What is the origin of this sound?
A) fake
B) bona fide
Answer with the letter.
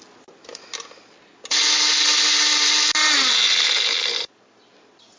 B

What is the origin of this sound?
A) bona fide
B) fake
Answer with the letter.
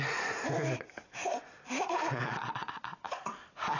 A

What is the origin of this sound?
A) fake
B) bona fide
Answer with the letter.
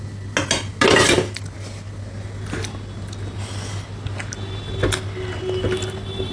B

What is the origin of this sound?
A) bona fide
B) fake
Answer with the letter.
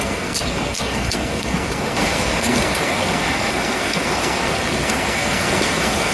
B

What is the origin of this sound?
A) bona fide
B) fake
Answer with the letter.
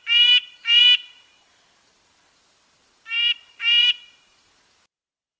B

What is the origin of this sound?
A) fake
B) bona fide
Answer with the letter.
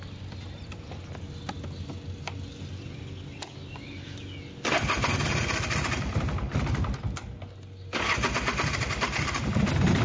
B